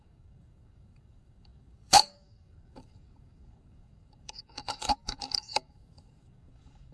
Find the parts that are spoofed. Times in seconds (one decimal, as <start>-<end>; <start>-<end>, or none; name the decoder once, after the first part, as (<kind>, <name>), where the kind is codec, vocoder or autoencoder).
0.0-6.9 (codec, DAC)